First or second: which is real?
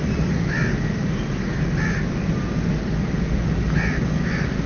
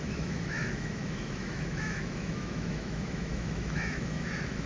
first